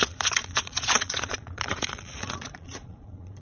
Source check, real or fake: fake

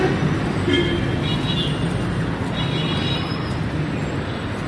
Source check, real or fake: real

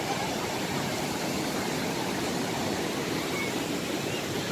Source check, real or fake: fake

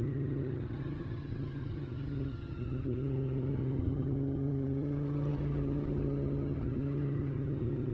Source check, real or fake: fake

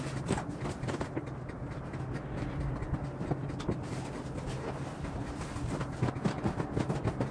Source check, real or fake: real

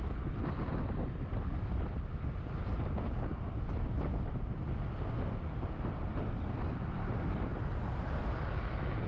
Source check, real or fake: real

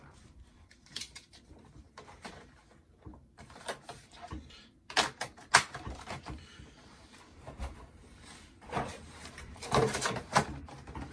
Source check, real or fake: fake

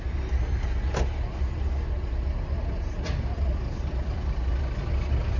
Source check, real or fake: real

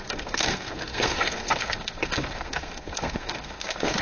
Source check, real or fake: fake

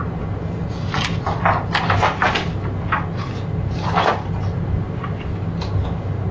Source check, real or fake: real